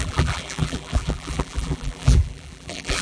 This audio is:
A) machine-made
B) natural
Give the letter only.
A